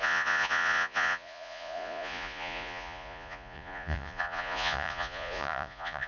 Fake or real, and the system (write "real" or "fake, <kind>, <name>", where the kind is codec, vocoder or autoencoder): fake, vocoder, Vocos